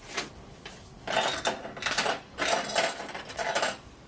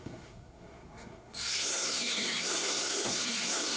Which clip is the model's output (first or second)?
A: second